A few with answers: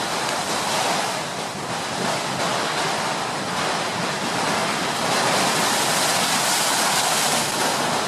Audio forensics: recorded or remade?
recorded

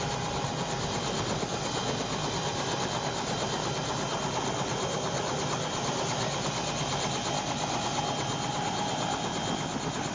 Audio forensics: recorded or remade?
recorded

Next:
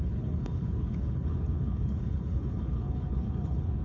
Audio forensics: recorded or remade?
remade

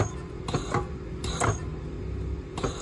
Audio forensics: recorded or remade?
recorded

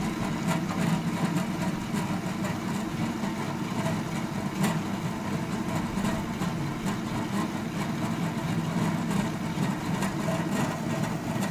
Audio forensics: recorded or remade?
recorded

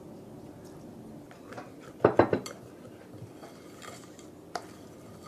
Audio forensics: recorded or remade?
recorded